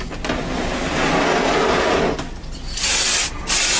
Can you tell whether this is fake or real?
real